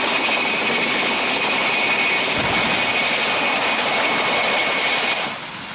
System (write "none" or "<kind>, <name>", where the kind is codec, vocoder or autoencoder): none